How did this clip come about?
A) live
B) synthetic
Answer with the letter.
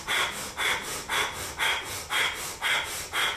A